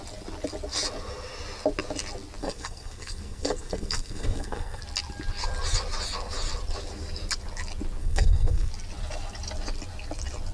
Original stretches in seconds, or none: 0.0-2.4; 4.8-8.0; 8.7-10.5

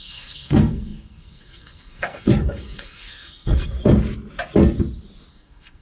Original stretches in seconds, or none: 3.8-5.3